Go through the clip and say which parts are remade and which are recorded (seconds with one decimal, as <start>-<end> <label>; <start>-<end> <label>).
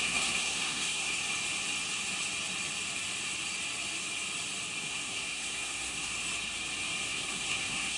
0.0-1.2 remade; 1.2-4.8 recorded; 4.8-6.1 remade; 6.1-7.0 recorded; 7.0-8.0 remade